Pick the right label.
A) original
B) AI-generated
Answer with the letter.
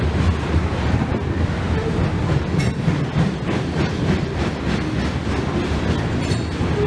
A